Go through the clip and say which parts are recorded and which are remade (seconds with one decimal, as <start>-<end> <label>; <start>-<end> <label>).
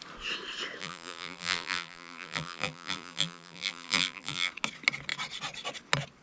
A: 0.0-0.8 recorded; 0.8-4.5 remade; 4.5-6.2 recorded